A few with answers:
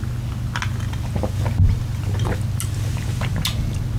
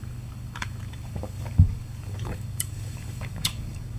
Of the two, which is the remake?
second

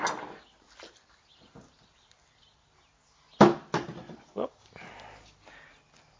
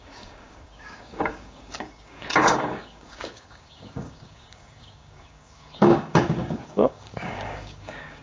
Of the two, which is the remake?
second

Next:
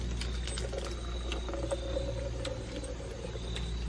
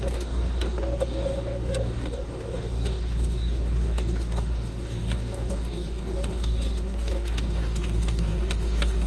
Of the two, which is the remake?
second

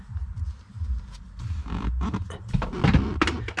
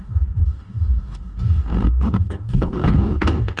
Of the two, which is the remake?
second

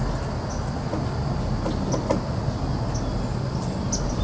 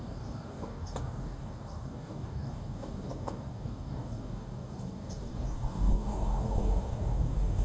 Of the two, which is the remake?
second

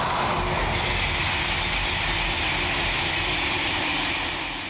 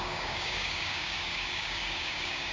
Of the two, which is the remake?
second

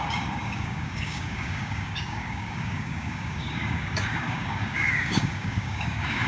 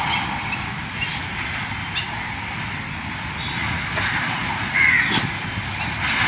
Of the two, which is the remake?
first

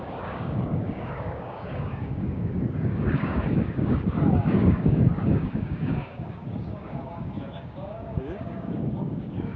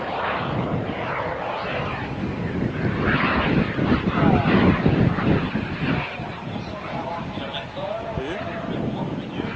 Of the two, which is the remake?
first